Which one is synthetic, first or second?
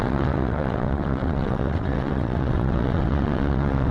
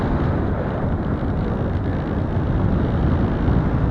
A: first